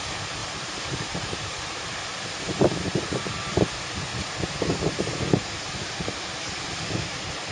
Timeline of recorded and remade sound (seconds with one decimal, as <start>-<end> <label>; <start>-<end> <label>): 0.0-0.4 recorded; 0.4-3.2 remade; 3.2-4.1 recorded; 4.1-6.8 remade; 6.8-7.5 recorded